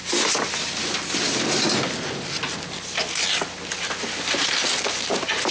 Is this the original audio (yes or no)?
yes